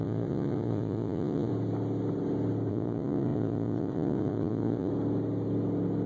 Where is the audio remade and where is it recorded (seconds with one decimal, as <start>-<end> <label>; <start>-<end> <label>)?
0.0-1.5 remade; 1.5-2.7 recorded; 2.7-4.9 remade; 4.9-6.1 recorded